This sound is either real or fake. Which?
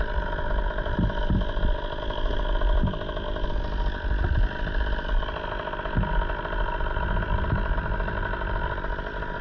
real